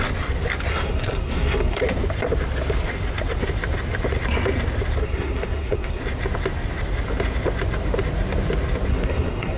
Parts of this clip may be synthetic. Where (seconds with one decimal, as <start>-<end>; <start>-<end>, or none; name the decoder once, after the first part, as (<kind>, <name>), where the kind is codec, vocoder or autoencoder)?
0.7-1.8 (codec, SNAC); 5.0-6.0; 8.9-9.6